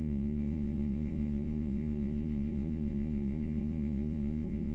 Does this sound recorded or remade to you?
remade